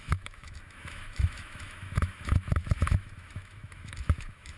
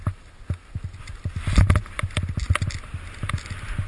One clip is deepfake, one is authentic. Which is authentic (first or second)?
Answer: second